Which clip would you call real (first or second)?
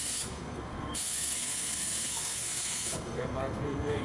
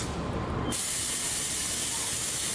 second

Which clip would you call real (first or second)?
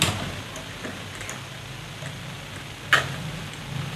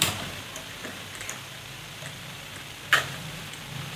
first